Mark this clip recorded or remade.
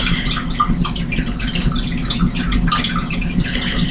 recorded